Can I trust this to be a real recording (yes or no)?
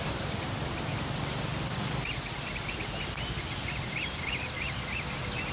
yes